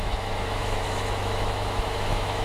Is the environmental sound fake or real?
fake